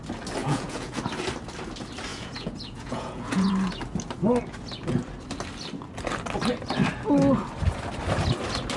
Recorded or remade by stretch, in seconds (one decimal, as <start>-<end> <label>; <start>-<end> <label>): 0.0-0.4 recorded; 0.4-1.0 remade; 1.0-2.1 recorded; 2.1-3.5 remade; 3.5-8.8 recorded